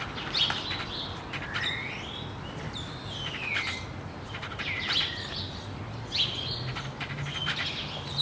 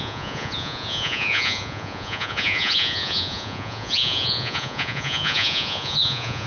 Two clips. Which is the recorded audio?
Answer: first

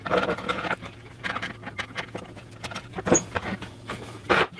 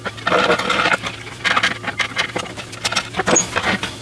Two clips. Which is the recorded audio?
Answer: second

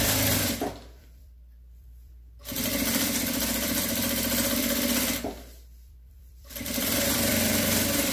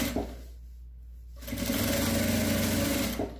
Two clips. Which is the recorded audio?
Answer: second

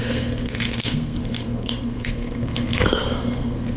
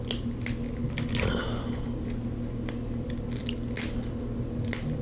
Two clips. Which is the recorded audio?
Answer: second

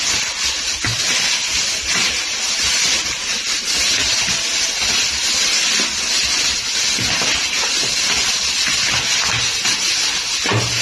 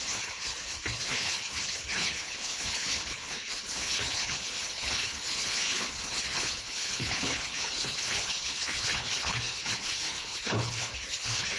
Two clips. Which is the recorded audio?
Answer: first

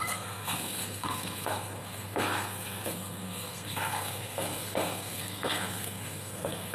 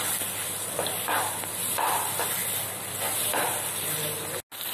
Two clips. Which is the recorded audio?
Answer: second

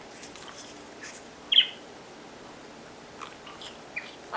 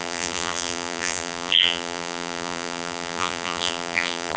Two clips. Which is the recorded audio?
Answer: first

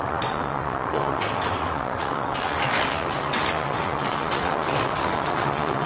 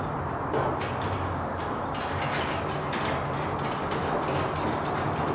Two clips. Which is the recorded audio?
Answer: second